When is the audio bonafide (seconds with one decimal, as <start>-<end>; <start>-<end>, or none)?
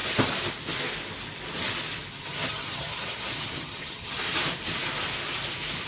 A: 0.0-2.1; 4.2-5.9